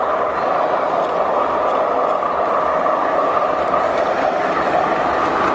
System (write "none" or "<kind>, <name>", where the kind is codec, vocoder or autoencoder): none